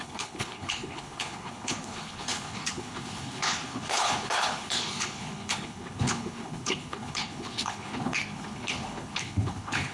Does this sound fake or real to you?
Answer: fake